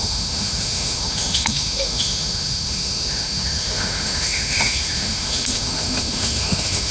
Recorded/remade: remade